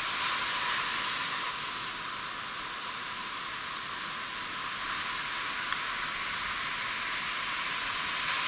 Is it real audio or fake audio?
real